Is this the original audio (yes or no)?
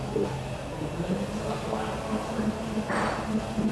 yes